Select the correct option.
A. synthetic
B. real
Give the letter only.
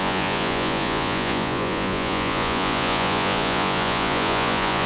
A